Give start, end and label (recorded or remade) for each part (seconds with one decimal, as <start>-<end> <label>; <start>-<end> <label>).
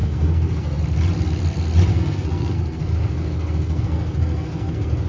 0.0-0.8 remade; 0.8-1.9 recorded; 1.9-5.1 remade